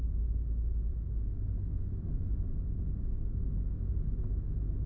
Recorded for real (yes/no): yes